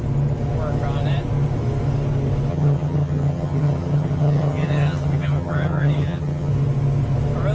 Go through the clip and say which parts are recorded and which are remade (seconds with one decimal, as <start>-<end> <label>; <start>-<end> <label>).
0.0-2.5 recorded; 2.5-6.5 remade; 6.5-7.5 recorded

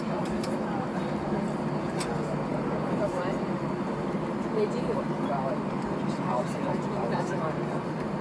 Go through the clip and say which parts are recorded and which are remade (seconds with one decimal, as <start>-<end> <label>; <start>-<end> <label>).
0.0-2.5 recorded; 2.5-7.4 remade; 7.4-8.2 recorded

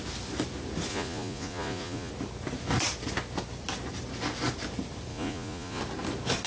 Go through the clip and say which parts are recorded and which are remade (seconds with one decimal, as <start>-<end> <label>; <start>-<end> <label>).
0.0-0.9 recorded; 0.9-2.1 remade; 2.1-5.1 recorded; 5.1-5.8 remade; 5.8-6.5 recorded

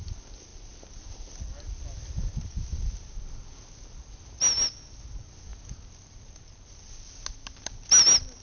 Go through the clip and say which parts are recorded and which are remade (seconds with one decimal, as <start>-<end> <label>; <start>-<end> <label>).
0.0-8.4 recorded

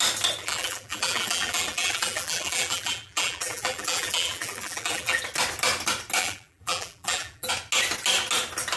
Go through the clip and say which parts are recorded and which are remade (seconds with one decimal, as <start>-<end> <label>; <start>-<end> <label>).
0.0-0.4 recorded; 0.4-5.2 remade; 5.2-6.2 recorded; 6.2-7.5 remade; 7.5-8.8 recorded

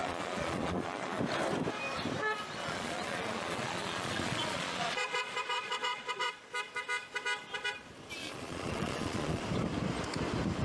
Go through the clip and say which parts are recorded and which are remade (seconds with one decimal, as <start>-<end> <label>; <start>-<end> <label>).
0.0-1.2 remade; 1.2-2.6 recorded; 2.6-6.3 remade; 6.3-8.2 recorded; 8.2-9.4 remade; 9.4-10.6 recorded